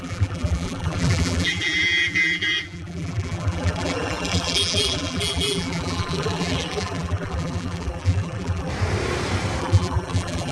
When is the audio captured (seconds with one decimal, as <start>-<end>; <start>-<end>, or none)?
8.7-9.6